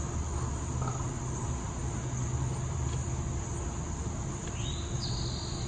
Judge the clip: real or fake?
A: real